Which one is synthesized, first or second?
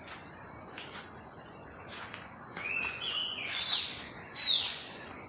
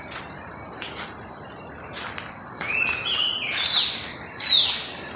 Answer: first